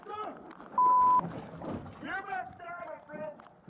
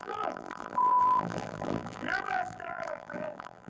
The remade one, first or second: second